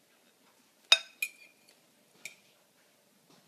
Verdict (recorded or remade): recorded